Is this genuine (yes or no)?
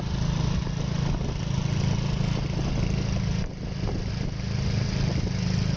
yes